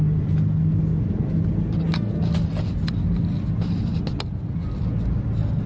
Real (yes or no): yes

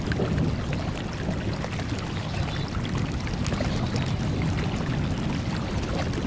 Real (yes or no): yes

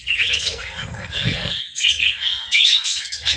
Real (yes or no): no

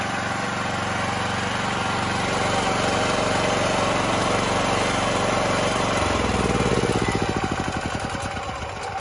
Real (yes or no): yes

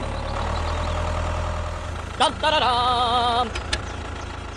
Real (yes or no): yes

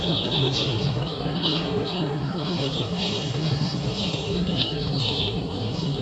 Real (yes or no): no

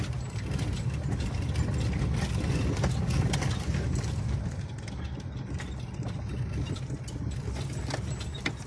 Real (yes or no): yes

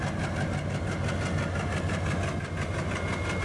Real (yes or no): yes